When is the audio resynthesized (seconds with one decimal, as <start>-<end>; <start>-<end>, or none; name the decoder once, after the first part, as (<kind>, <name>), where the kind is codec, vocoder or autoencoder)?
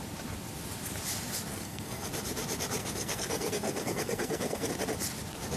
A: 1.5-2.1 (codec, SNAC); 2.8-4.7